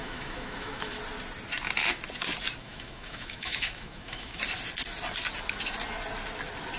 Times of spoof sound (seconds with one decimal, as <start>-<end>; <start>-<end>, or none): 0.0-1.0; 2.6-4.4